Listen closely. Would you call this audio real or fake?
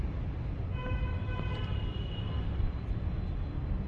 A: real